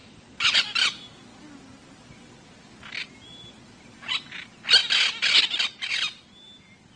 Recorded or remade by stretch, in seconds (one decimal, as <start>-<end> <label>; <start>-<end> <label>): 0.0-0.6 remade; 0.6-7.0 recorded